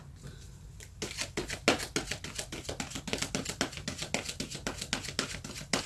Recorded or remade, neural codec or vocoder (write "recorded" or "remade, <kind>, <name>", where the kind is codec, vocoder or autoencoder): recorded